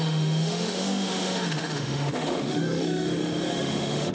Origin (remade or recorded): remade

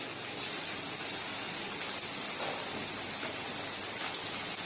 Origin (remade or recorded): recorded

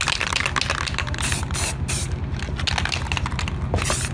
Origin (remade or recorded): recorded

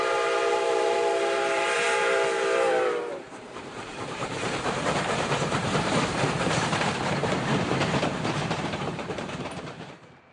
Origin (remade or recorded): remade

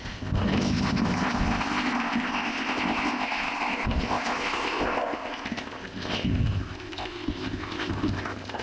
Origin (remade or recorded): remade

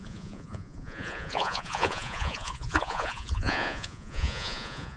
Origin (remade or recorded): remade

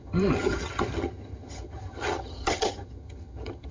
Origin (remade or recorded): remade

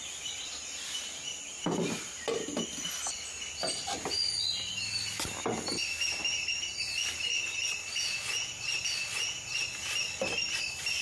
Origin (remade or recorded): recorded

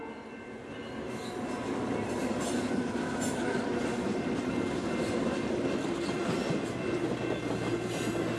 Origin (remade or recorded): recorded